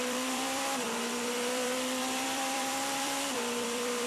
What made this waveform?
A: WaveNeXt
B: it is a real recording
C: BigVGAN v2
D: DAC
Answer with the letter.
C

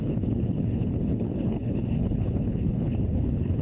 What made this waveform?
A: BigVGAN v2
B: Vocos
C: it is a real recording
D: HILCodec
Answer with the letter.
D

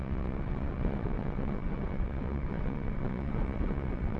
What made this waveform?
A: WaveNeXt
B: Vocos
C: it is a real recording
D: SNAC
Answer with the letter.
A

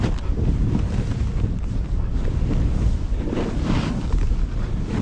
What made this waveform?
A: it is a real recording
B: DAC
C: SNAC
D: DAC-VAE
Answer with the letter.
A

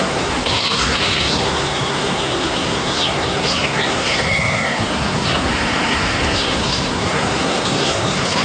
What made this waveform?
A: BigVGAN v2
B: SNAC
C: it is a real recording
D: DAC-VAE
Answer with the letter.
B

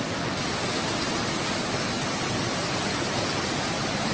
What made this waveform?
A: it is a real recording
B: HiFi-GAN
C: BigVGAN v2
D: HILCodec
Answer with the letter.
A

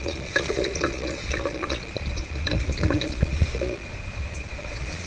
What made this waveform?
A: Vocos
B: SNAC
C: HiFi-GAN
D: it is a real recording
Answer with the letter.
A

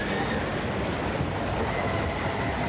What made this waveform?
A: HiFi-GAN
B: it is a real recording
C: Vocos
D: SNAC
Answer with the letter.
B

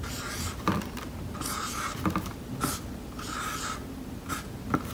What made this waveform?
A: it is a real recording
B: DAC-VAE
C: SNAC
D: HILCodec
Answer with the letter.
A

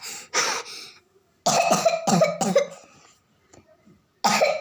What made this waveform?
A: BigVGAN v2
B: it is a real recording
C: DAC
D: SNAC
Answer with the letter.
B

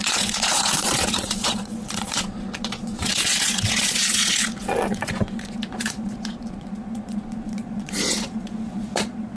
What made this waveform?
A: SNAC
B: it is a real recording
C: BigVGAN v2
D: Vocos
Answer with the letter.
D